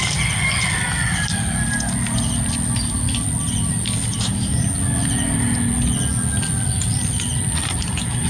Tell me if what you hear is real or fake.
real